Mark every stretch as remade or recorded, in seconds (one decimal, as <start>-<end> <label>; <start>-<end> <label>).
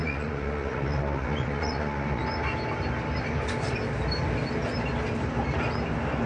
0.0-2.2 remade; 2.2-6.3 recorded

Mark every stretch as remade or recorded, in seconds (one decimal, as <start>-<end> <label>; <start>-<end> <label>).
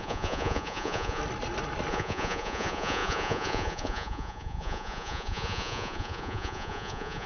0.0-1.2 remade; 1.2-1.9 recorded; 1.9-7.3 remade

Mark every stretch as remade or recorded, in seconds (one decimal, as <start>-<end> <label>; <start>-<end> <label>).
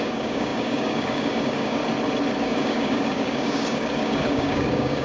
0.0-1.8 remade; 1.8-2.4 recorded; 2.4-5.0 remade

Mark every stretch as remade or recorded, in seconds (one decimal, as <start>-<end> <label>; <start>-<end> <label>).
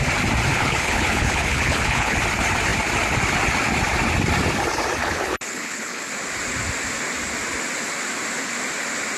0.0-0.5 recorded; 0.5-2.2 remade; 2.2-5.0 recorded; 5.0-6.1 remade; 6.1-9.2 recorded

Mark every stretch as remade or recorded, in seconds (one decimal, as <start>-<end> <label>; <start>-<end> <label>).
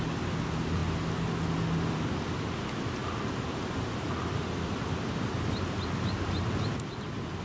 0.0-7.4 recorded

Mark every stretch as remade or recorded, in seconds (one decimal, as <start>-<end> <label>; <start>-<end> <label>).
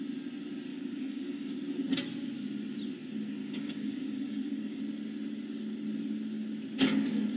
0.0-0.7 recorded; 0.7-1.5 remade; 1.5-3.4 recorded; 3.4-4.8 remade; 4.8-7.4 recorded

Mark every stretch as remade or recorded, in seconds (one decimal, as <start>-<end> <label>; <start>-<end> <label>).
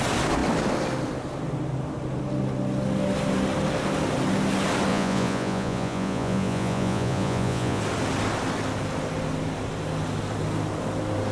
0.0-4.9 recorded; 4.9-7.8 remade; 7.8-11.3 recorded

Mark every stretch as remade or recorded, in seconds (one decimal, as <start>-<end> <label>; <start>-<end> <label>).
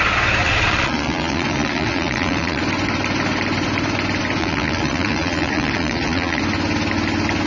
0.0-0.4 recorded; 0.4-2.6 remade; 2.6-4.4 recorded; 4.4-6.4 remade; 6.4-7.5 recorded